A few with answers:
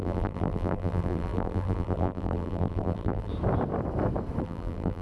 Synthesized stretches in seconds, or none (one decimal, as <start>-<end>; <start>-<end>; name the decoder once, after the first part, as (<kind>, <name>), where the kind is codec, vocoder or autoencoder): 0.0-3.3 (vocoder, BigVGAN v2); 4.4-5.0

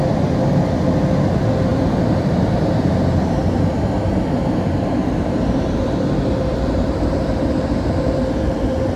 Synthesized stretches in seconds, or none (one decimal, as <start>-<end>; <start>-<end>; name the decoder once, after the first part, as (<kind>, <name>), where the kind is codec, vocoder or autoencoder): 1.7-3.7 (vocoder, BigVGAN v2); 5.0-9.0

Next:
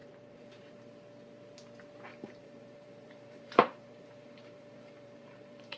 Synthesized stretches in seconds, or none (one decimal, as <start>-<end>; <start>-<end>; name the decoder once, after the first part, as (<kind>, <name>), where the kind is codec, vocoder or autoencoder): 0.0-0.8 (vocoder, BigVGAN v2); 2.1-5.8